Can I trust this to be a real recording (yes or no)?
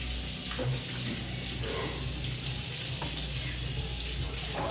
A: yes